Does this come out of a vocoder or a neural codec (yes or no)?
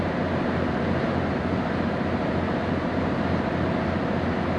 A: no